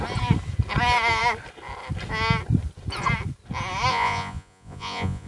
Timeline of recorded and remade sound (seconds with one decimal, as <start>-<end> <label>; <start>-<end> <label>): 0.0-3.9 recorded; 3.9-5.3 remade